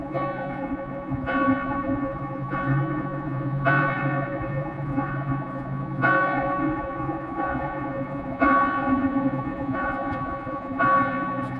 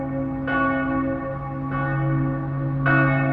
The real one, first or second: second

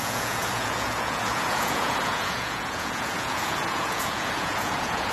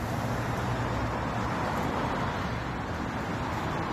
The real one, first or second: second